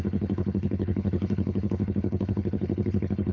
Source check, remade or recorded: remade